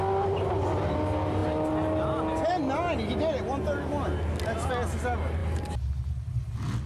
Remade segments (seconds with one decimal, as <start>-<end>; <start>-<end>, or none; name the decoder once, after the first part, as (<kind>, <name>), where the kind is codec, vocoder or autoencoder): none